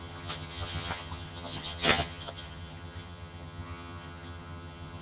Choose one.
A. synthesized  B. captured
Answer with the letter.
A